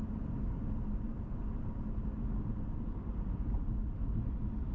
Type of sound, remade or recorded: recorded